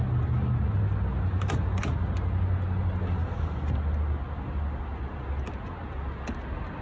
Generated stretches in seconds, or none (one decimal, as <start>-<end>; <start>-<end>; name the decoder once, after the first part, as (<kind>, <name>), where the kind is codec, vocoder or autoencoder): none